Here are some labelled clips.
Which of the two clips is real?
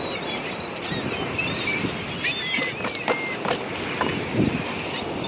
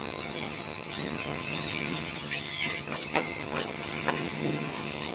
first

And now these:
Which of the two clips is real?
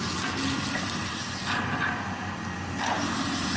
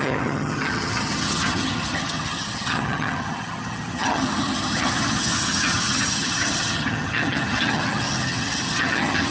first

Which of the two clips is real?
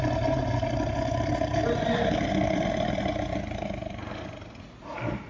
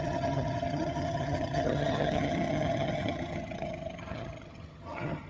first